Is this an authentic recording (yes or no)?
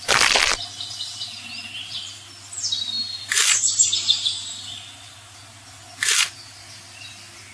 yes